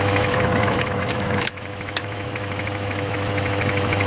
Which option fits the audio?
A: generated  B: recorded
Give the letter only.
A